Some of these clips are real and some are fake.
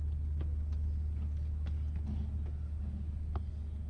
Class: real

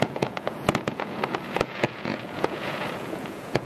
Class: fake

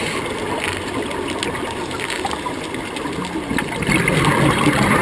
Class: real